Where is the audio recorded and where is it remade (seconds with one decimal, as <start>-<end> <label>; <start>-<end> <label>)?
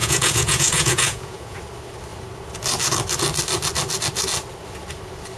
0.0-1.6 remade; 1.6-5.4 recorded